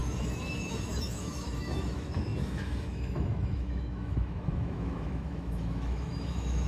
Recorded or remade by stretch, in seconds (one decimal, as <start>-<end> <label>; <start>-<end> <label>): 0.0-6.7 remade